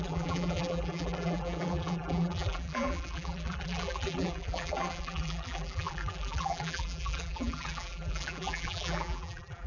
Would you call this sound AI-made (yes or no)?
yes